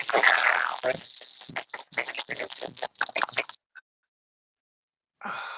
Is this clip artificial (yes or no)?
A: no